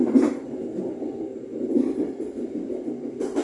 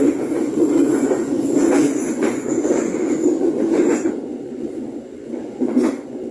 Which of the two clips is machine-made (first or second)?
second